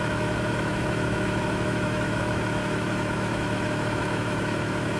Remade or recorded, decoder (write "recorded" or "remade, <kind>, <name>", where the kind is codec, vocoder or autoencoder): remade, autoencoder, DAC-VAE